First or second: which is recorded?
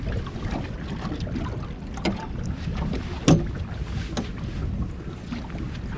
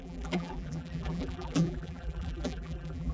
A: first